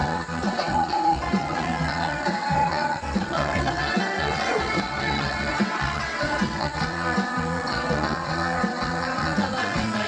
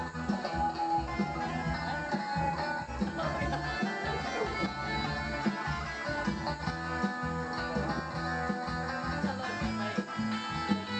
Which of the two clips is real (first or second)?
second